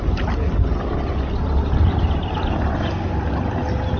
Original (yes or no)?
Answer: yes